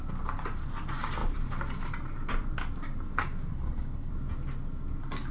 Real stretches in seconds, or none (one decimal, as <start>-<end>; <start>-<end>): 0.0-3.5; 4.1-5.3